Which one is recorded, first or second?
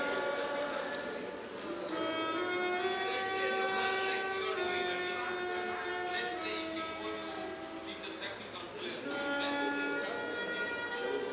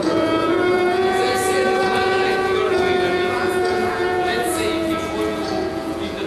first